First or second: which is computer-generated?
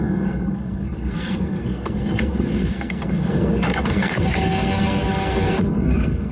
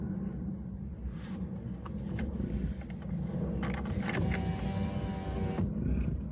first